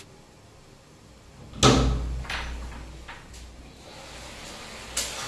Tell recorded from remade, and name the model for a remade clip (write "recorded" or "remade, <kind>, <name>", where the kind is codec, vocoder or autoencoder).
recorded